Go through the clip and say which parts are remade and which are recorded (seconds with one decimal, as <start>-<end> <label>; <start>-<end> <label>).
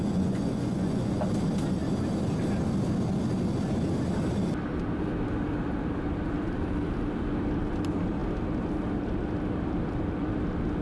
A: 0.0-1.2 remade; 1.2-10.8 recorded